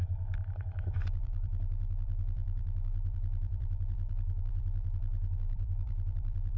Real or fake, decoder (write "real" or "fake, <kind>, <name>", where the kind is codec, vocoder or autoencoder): fake, vocoder, BigVGAN v2